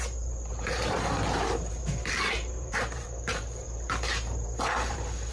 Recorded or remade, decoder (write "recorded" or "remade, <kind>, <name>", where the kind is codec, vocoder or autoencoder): remade, vocoder, BigVGAN v2